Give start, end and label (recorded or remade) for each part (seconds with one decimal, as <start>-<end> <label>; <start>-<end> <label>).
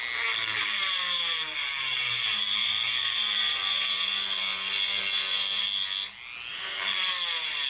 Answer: 0.0-0.6 recorded; 0.6-4.1 remade; 4.1-6.5 recorded; 6.5-7.1 remade; 7.1-7.7 recorded